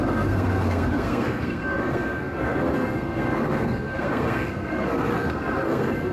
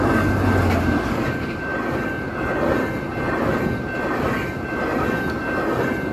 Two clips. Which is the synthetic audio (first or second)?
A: first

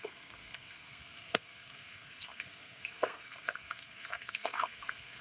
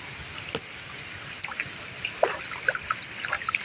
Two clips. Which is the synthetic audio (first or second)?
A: first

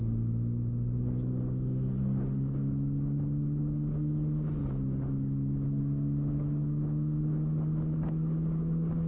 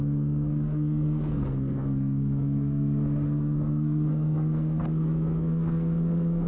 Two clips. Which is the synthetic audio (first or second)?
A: second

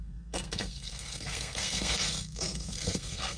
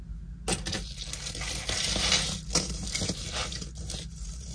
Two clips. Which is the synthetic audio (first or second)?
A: first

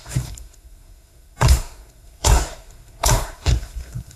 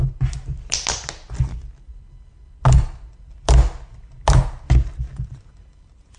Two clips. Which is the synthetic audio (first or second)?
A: first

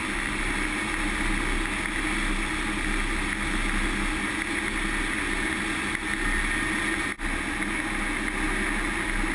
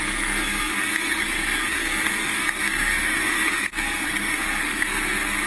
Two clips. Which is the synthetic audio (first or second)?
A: second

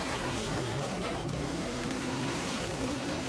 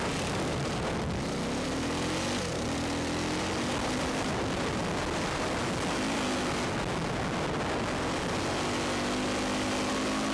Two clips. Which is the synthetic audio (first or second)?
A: first